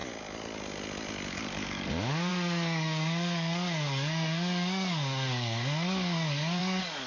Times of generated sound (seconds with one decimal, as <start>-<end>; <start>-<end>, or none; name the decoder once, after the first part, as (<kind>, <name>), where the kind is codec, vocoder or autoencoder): 1.3-7.1 (codec, DAC)